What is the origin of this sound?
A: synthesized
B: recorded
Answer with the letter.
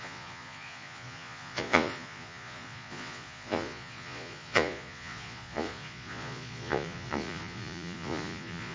A